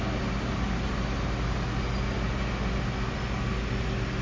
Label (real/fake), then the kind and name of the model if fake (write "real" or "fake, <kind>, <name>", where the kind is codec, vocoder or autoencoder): real